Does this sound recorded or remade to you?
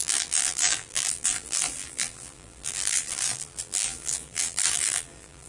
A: remade